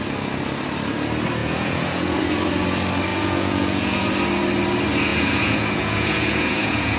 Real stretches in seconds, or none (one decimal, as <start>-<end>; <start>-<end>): 0.0-1.4; 2.2-3.1; 4.1-5.1